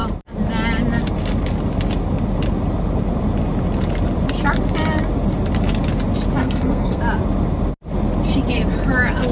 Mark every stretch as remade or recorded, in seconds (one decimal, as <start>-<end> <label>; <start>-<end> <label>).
0.0-6.4 recorded; 6.4-7.0 remade; 7.0-9.3 recorded